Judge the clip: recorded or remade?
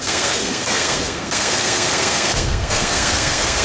remade